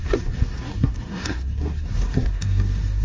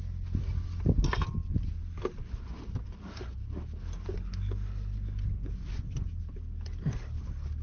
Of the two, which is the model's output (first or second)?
first